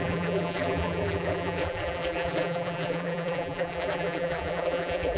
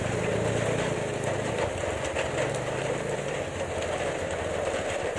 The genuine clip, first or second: second